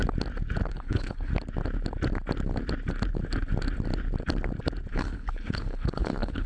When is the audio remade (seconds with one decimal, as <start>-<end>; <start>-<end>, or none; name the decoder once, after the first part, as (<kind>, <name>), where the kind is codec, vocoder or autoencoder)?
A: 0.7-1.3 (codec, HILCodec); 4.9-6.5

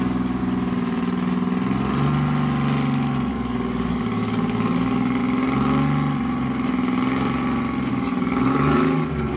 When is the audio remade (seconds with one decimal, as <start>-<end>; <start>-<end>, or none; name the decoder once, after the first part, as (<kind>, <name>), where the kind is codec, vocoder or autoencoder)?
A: 0.0-0.4 (codec, DAC); 3.3-5.2; 7.9-9.4

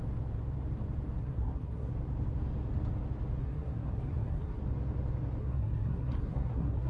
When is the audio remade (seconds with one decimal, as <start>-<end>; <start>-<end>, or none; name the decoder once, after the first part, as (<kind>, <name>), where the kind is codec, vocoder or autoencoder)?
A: 1.2-1.9 (codec, SNAC); 3.4-4.6; 5.4-6.9

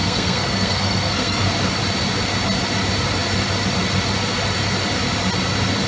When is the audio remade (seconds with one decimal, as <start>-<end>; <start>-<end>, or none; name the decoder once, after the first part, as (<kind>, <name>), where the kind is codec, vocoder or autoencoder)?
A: 0.0-1.5 (codec, SNAC)